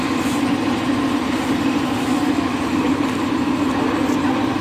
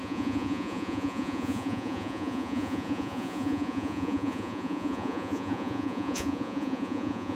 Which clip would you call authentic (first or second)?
first